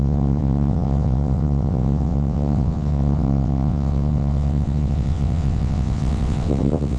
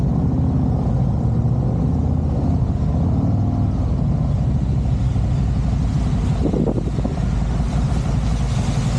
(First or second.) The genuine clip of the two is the second